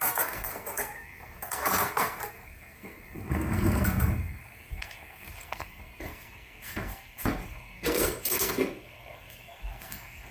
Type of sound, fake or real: fake